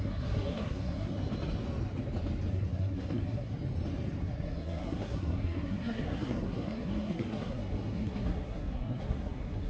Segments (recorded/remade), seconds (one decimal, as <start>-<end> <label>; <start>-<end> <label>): 0.0-1.1 remade; 1.1-2.5 recorded; 2.5-3.5 remade; 3.5-4.2 recorded; 4.2-9.7 remade